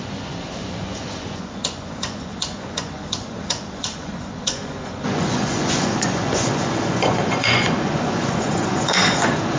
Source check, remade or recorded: remade